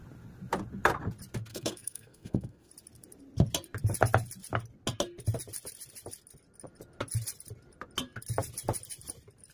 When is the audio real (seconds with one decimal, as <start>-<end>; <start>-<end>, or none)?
0.0-1.5; 2.7-9.5